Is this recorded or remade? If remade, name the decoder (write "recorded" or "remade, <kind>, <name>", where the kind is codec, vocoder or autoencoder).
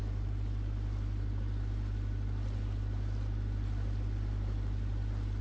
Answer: recorded